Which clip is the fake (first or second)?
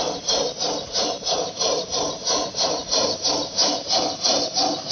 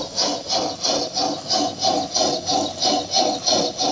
first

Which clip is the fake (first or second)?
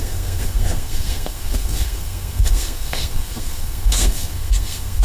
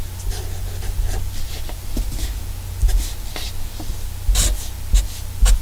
first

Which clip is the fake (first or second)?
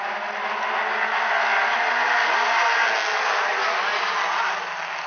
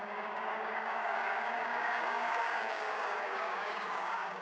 second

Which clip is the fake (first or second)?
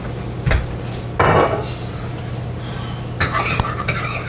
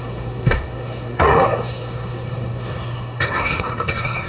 second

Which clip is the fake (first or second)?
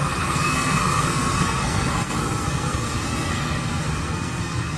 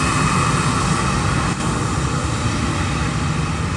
first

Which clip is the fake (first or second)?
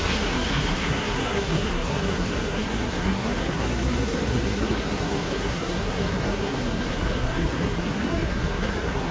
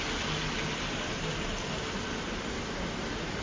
first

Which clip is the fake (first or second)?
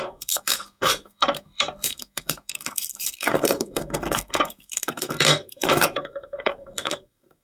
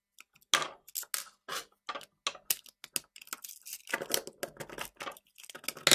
first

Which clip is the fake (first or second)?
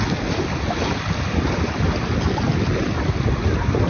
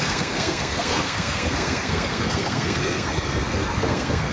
second